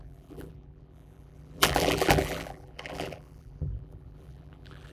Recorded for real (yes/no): no